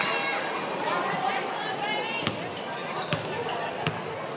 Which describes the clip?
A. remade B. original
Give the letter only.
B